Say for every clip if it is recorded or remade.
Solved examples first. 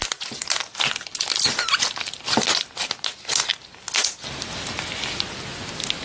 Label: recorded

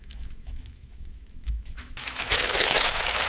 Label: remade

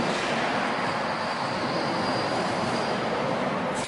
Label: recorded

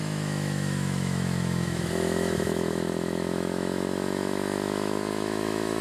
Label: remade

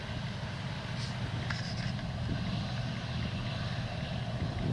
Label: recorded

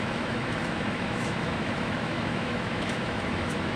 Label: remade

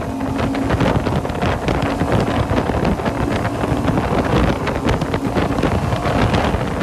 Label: recorded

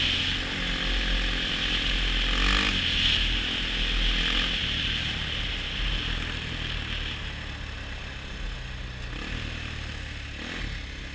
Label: recorded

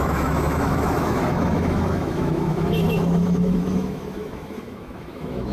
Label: remade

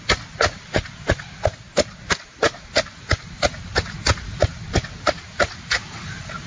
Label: recorded